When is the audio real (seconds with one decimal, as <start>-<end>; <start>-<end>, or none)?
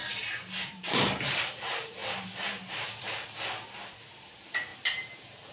0.0-0.7; 2.0-4.1; 4.7-5.5